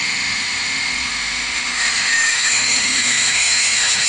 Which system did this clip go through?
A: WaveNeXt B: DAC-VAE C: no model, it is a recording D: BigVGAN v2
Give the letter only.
B